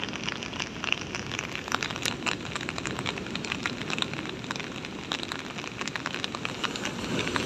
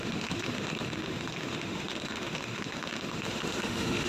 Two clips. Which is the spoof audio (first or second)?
second